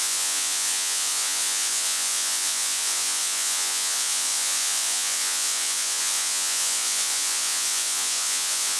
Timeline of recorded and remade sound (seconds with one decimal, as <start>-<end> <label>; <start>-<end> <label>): 0.0-8.8 remade